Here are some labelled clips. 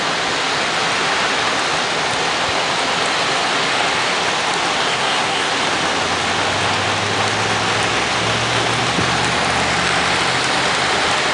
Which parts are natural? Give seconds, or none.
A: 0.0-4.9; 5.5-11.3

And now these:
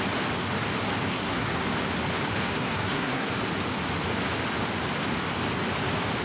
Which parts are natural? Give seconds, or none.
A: 0.0-1.1; 1.6-2.5; 3.3-6.2

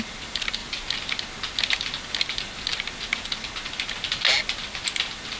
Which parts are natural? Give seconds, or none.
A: 0.0-5.4

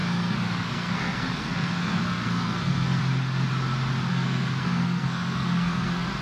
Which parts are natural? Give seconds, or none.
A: 3.0-4.1

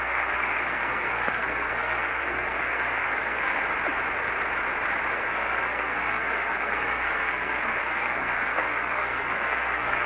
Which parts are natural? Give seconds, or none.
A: 3.6-5.1

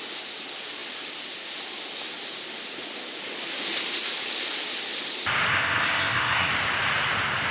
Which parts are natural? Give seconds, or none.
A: 0.0-5.5; 6.5-7.5

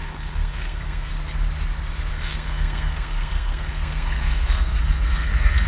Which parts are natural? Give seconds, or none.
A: 1.1-2.1